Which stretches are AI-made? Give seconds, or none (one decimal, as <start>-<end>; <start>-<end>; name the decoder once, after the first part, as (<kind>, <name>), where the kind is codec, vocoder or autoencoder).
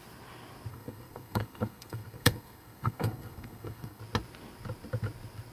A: 0.7-4.0 (codec, SNAC)